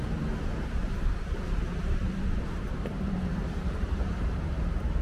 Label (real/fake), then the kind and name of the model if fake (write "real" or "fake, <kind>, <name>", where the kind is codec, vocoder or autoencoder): fake, vocoder, BigVGAN v2